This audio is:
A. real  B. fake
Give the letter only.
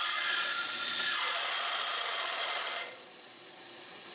B